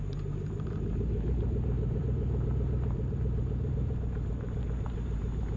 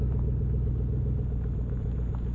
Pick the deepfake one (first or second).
first